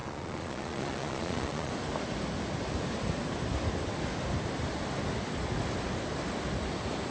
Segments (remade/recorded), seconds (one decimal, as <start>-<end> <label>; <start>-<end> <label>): 0.0-1.7 remade; 1.7-7.1 recorded